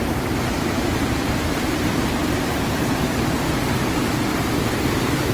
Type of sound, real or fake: fake